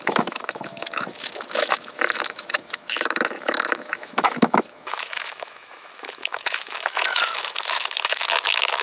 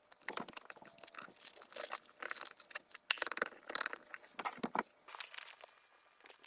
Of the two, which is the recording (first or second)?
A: second